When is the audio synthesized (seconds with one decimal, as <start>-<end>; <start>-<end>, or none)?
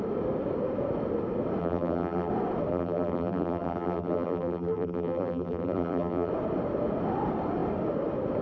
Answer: 1.6-2.3; 2.7-6.3